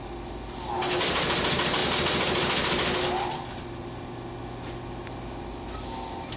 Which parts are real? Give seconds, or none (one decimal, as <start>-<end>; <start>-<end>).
0.0-6.4